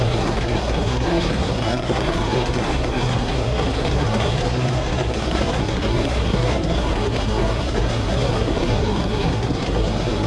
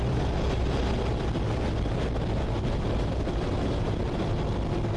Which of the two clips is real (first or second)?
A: second